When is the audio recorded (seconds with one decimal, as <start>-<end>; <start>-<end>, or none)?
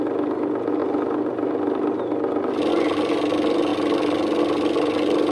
0.0-5.3